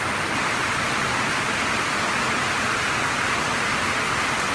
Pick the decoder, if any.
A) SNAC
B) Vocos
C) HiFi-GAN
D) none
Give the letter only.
D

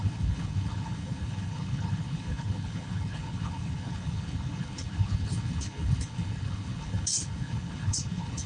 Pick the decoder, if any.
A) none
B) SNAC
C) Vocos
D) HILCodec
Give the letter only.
D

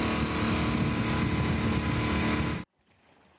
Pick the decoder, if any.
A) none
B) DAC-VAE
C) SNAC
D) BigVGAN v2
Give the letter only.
A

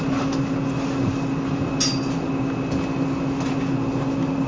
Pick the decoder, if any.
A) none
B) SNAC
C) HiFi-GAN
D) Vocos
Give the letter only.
A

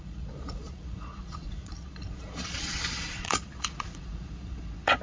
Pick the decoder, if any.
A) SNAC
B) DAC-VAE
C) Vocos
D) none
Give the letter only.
C